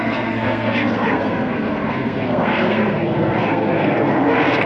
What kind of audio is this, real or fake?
fake